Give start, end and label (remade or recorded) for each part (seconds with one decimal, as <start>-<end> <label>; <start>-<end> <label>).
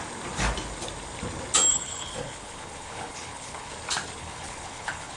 0.0-1.7 recorded; 1.7-3.7 remade; 3.7-4.2 recorded; 4.2-5.2 remade